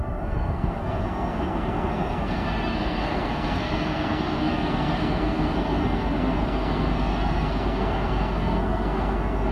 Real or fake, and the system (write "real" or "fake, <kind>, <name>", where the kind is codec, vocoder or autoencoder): fake, codec, SNAC